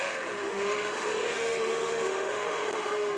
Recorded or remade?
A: remade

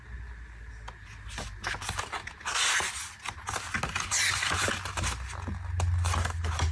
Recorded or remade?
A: recorded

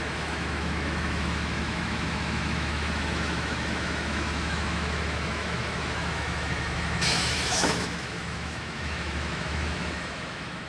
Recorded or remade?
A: remade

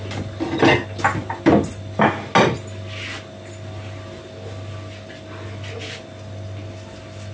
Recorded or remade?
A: recorded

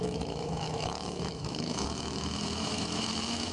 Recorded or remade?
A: remade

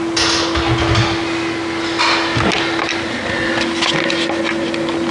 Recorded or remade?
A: recorded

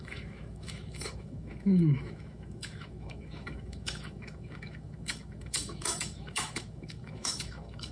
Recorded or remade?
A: remade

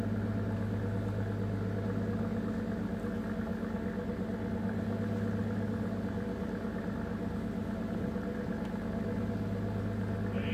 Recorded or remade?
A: recorded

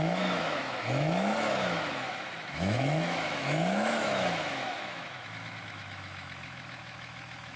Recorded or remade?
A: remade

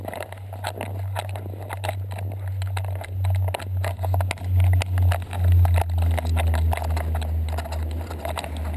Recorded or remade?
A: recorded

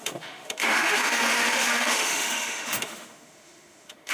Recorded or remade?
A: remade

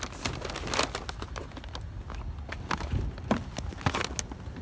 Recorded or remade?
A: recorded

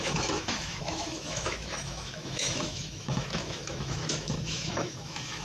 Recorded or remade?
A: remade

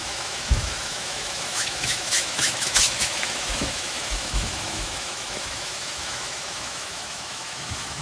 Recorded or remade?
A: remade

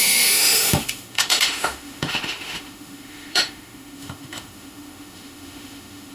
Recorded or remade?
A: remade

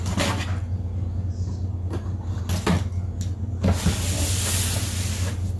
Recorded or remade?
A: recorded